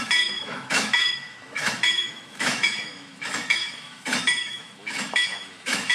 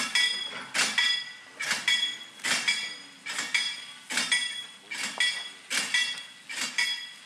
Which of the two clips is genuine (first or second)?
second